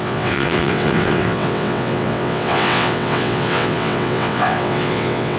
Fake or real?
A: fake